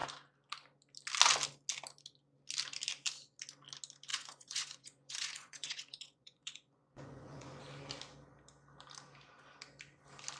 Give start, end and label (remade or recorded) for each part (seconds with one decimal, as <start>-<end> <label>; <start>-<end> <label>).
0.0-4.1 recorded; 4.1-7.6 remade; 7.6-10.4 recorded